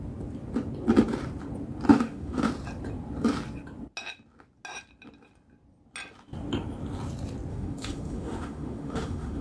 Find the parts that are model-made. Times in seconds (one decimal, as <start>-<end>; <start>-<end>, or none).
1.9-2.5; 7.5-9.4